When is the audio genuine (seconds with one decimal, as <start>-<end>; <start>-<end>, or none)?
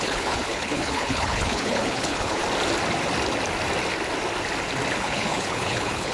2.4-5.0